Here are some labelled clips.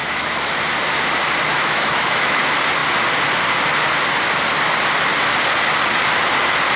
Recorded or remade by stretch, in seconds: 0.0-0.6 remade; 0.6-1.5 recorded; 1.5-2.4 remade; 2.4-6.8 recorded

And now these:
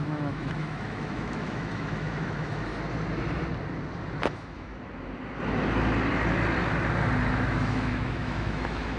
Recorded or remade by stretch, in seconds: 0.0-2.7 remade; 2.7-4.2 recorded; 4.2-4.7 remade; 4.7-7.3 recorded; 7.3-9.0 remade

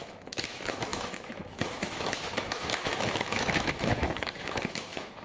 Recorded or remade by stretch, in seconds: 0.0-5.2 remade

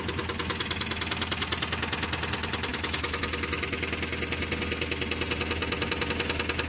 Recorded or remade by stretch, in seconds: 0.0-2.7 recorded; 2.7-3.2 remade; 3.2-6.7 recorded

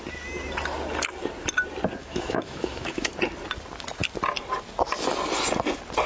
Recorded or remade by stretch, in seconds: 0.0-2.0 recorded; 2.0-3.1 remade; 3.1-6.1 recorded

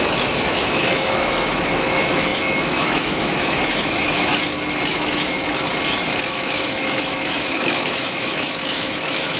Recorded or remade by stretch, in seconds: 0.0-4.3 remade; 4.3-4.9 recorded; 4.9-5.4 remade; 5.4-6.2 recorded; 6.2-9.4 remade